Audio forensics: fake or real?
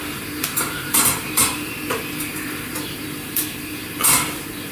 fake